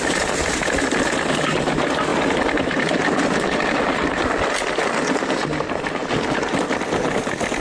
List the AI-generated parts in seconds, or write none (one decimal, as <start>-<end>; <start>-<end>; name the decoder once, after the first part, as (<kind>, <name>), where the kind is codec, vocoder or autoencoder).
2.1-4.8 (vocoder, BigVGAN v2)